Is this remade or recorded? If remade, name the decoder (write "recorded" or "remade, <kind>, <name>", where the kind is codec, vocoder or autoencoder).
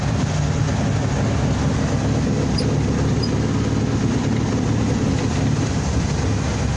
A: recorded